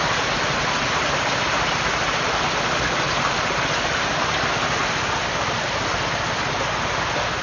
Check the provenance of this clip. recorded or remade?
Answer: recorded